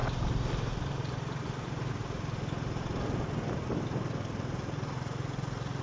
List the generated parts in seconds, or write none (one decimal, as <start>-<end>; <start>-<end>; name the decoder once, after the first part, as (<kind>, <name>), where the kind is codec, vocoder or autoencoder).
0.0-2.0 (vocoder, BigVGAN v2)